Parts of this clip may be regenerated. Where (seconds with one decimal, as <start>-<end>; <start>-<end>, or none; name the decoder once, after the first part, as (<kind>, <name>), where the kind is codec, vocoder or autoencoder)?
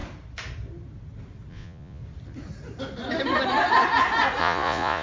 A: 1.5-2.0 (vocoder, Vocos); 4.4-5.0